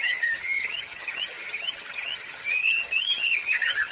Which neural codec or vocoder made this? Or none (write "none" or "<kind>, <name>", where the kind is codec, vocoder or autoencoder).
vocoder, HiFi-GAN